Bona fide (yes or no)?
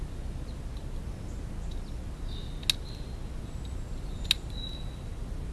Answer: yes